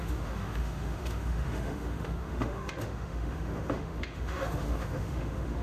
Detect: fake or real fake